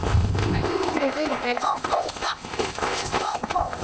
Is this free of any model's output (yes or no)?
no